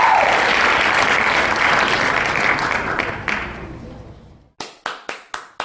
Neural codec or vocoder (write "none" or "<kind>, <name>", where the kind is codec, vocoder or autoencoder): none